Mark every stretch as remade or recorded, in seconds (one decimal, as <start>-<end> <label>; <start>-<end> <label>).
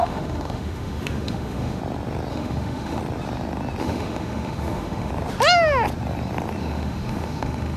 0.0-1.8 remade; 1.8-2.3 recorded; 2.3-3.0 remade; 3.0-3.8 recorded; 3.8-5.1 remade; 5.1-6.6 recorded; 6.6-7.8 remade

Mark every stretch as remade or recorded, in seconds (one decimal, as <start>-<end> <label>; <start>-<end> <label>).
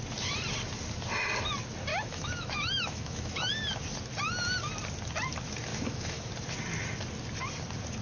0.0-1.9 recorded; 1.9-3.5 remade; 3.5-5.7 recorded; 5.7-6.3 remade; 6.3-8.0 recorded